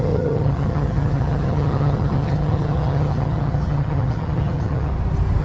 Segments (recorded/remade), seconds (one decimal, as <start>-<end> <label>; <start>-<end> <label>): 0.0-4.9 remade; 4.9-5.4 recorded